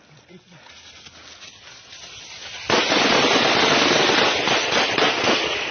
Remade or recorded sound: recorded